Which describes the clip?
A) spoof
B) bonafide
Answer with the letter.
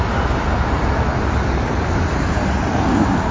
B